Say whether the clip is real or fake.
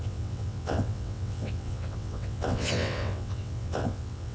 fake